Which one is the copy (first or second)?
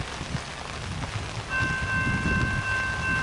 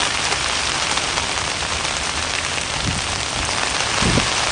second